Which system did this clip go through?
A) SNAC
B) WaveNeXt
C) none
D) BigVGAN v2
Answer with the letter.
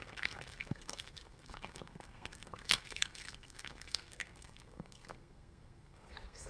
A